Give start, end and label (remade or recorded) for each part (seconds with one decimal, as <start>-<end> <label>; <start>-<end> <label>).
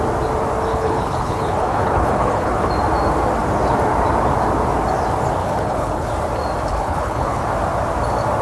0.0-0.7 recorded; 0.7-2.7 remade; 2.7-5.4 recorded; 5.4-6.1 remade; 6.1-6.7 recorded; 6.7-7.4 remade; 7.4-8.4 recorded